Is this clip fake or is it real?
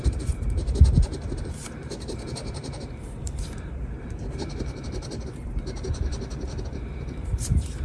fake